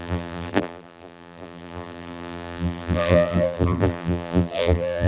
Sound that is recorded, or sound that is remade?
remade